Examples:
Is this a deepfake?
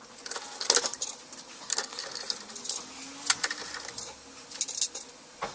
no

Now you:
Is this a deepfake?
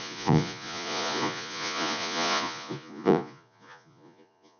yes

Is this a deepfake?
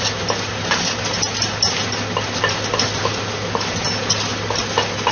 no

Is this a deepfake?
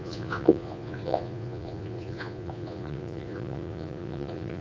yes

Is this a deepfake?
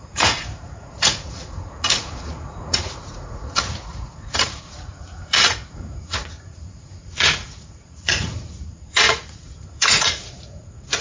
yes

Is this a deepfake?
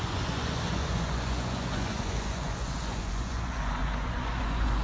yes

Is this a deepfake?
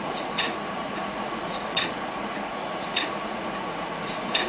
yes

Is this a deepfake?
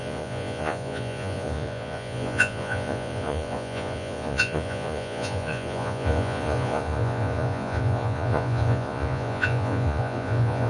yes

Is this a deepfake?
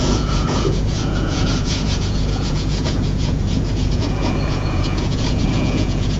yes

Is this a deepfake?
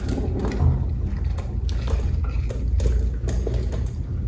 no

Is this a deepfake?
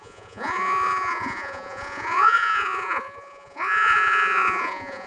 yes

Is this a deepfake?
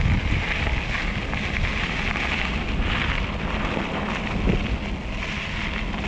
no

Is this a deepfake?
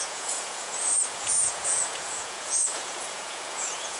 yes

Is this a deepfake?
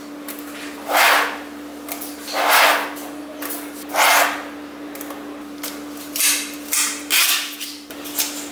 no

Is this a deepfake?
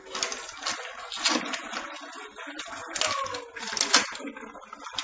no